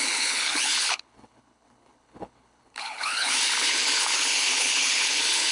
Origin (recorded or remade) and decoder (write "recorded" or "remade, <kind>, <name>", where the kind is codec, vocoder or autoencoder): remade, codec, HILCodec